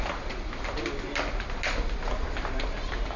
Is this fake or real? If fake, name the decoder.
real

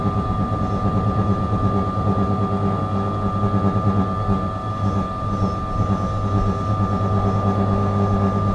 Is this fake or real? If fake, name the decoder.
real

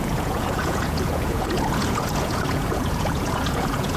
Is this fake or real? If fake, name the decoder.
fake, vocoder, Vocos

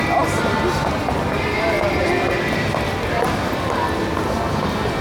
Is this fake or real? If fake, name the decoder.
real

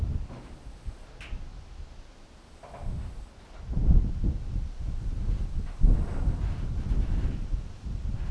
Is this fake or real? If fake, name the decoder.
real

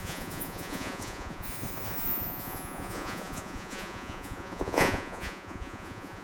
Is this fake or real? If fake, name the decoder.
fake, vocoder, Vocos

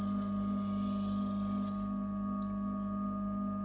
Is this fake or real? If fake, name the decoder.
real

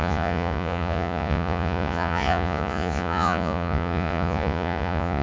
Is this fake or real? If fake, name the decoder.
fake, vocoder, Vocos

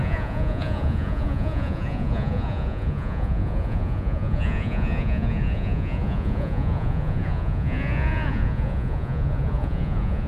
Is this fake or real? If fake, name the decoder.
fake, vocoder, Vocos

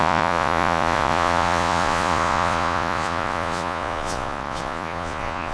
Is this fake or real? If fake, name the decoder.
fake, vocoder, Vocos